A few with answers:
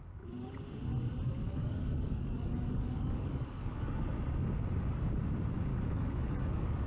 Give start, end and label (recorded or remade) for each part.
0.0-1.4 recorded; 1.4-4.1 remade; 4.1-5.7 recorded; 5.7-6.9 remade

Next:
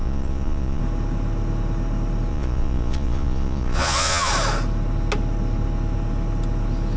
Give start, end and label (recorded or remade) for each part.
0.0-0.8 remade; 0.8-2.3 recorded; 2.3-4.3 remade; 4.3-7.0 recorded

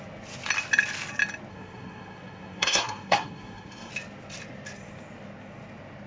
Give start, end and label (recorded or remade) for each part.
0.0-1.5 recorded; 1.5-3.9 remade; 3.9-6.1 recorded

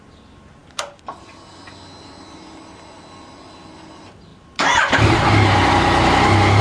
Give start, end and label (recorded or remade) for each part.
0.0-6.6 recorded